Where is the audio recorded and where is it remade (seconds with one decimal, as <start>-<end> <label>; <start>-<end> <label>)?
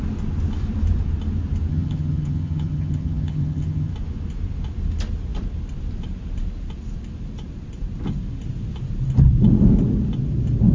0.0-1.7 recorded; 1.7-3.9 remade; 3.9-10.7 recorded